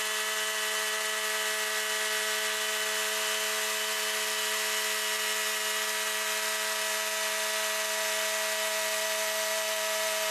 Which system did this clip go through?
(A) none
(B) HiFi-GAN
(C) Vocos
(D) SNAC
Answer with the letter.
A